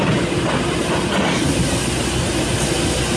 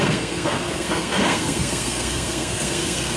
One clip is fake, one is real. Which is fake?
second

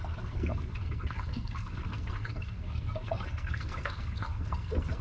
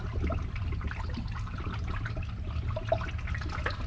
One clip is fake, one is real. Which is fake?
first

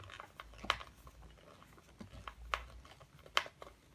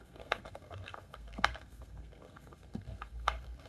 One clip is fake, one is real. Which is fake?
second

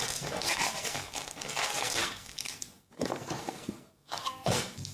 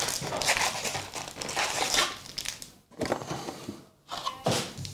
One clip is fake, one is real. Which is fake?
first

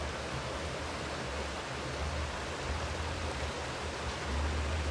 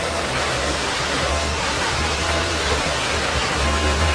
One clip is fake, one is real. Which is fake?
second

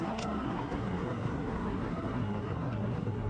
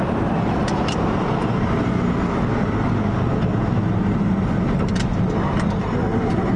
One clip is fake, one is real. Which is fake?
first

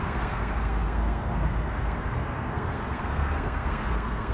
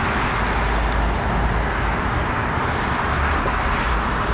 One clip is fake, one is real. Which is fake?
first